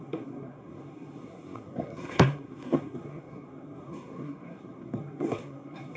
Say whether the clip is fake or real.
fake